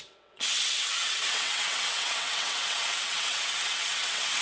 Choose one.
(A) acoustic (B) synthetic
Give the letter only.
B